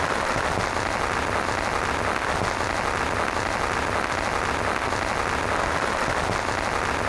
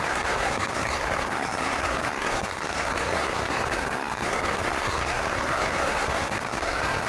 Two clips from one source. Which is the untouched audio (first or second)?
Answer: first